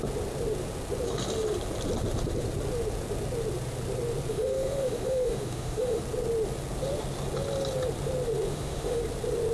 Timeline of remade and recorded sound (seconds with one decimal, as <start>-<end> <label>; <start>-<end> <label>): 0.0-4.3 recorded; 4.3-6.0 remade; 6.0-8.5 recorded; 8.5-9.0 remade; 9.0-9.5 recorded